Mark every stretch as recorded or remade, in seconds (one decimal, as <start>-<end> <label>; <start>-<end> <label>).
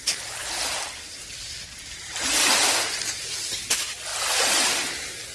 0.0-5.3 recorded